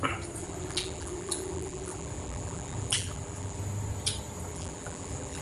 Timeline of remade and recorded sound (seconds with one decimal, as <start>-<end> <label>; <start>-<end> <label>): 0.0-0.4 recorded; 0.4-3.6 remade; 3.6-4.5 recorded; 4.5-5.4 remade